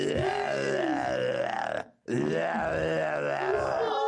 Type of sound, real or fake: real